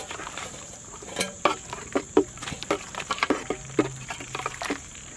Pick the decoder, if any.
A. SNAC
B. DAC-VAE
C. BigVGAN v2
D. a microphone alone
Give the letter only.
C